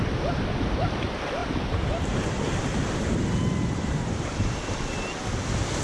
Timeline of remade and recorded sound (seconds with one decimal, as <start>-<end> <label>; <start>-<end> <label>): 0.0-1.4 recorded; 1.4-4.9 remade; 4.9-5.8 recorded